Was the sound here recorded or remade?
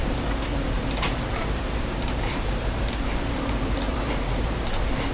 remade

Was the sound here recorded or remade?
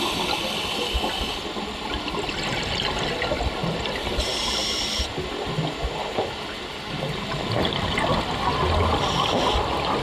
recorded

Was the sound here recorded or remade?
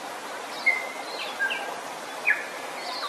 recorded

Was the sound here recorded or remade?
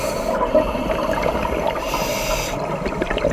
recorded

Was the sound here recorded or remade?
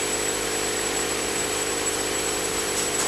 remade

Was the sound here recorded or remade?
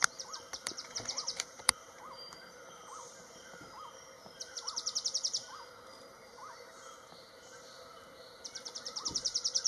remade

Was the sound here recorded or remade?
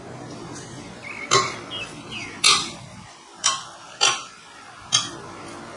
recorded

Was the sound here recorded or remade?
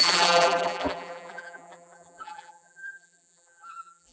remade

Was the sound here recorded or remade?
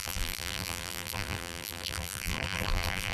remade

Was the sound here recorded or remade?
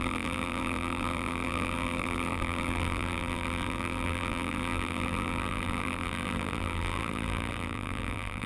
remade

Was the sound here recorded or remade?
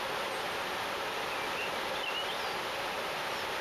recorded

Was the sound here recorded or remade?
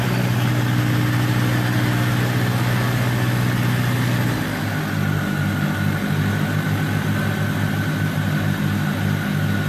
recorded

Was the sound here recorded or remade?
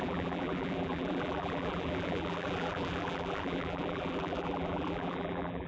remade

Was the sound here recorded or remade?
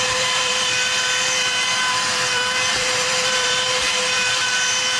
remade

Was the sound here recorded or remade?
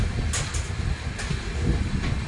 recorded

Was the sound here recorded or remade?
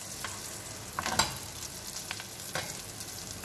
recorded